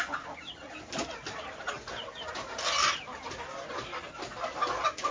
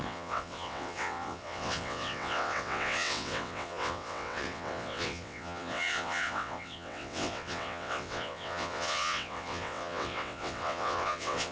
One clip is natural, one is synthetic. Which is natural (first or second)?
first